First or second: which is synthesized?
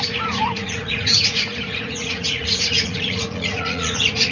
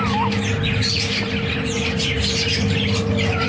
first